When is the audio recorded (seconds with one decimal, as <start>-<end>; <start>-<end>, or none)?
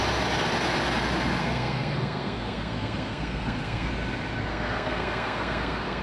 0.0-1.4; 3.9-4.5